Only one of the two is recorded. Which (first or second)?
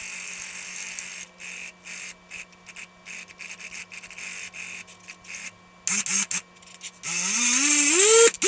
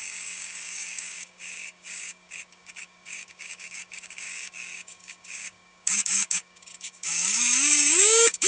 first